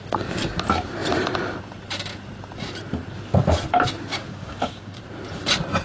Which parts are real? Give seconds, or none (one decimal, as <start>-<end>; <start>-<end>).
0.0-4.3; 5.0-5.8

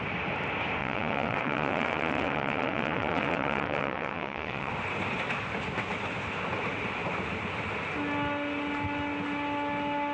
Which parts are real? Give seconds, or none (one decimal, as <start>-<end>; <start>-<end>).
0.0-0.8; 4.7-10.1

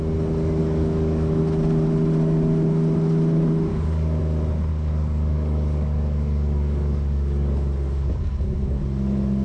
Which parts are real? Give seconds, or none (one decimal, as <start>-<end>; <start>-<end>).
0.0-0.6; 1.4-3.7; 4.2-4.7; 8.8-9.4

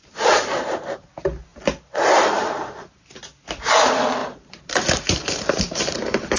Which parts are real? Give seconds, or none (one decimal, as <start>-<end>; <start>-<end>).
1.1-1.5; 3.0-4.2

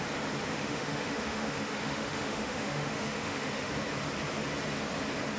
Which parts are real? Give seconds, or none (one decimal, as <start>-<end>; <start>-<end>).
0.0-0.5; 3.7-5.4